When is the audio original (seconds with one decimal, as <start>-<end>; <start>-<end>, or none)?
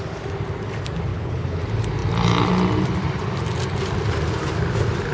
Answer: 0.0-1.1; 1.6-5.1